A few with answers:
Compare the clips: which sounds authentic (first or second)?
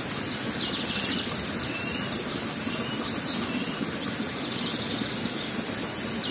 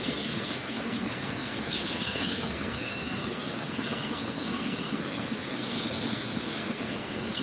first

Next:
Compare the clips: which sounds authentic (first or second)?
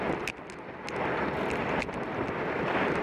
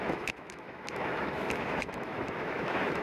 first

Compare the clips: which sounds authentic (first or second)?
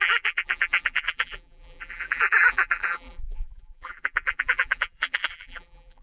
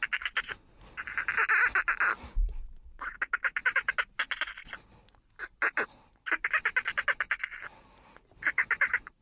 second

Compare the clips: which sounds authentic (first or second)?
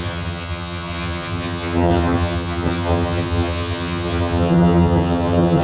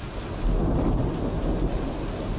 second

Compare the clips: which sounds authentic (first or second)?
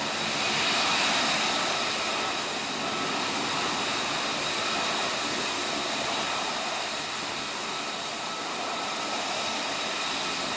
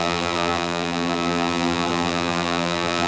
first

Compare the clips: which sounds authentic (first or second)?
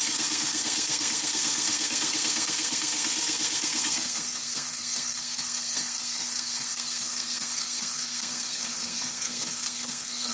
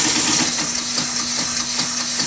second